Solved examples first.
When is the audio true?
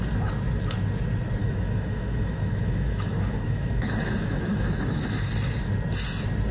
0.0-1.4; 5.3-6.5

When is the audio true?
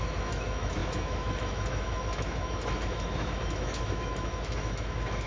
none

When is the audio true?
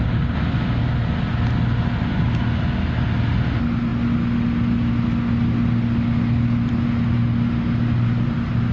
0.0-8.7